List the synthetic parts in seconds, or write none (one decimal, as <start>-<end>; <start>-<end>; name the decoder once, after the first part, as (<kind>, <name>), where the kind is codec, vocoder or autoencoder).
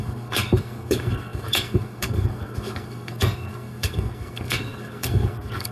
0.0-5.7 (codec, SNAC)